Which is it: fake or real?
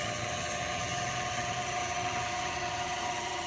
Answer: fake